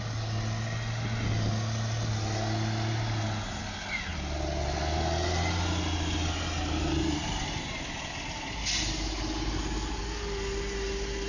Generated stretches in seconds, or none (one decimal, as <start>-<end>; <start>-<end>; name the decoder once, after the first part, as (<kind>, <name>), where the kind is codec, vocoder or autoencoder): none